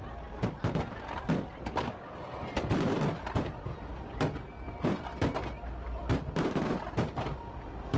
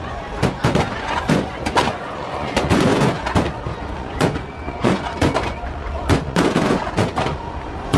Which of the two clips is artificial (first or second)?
second